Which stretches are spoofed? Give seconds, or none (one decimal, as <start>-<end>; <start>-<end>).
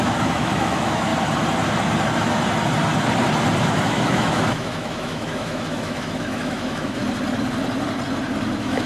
0.0-1.1; 3.8-7.0; 8.5-8.9